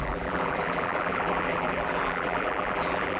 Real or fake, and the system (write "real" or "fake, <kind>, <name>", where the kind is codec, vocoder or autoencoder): fake, vocoder, BigVGAN v2